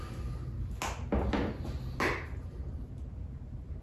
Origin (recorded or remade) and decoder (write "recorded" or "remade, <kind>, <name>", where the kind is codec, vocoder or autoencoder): recorded